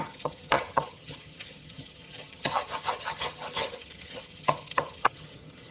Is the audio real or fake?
fake